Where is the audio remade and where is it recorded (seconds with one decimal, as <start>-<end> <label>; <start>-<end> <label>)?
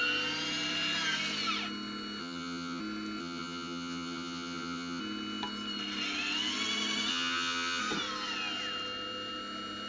0.0-2.2 recorded; 2.2-2.8 remade; 2.8-3.2 recorded; 3.2-5.0 remade; 5.0-7.1 recorded; 7.1-7.8 remade; 7.8-9.9 recorded